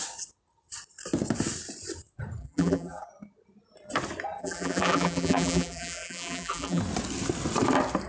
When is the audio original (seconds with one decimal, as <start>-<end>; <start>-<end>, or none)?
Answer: 0.0-2.4; 3.1-4.4; 6.8-8.1